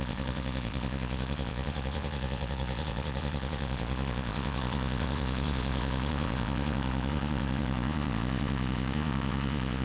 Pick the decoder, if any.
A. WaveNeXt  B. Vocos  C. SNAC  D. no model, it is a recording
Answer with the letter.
B